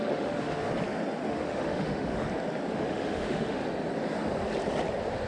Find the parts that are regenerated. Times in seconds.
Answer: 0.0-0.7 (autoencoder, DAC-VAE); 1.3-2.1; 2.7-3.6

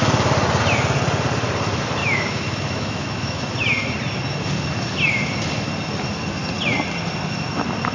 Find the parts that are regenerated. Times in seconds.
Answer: 2.0-3.4 (autoencoder, DAC-VAE)

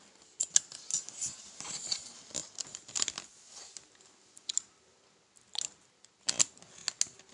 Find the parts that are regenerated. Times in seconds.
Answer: none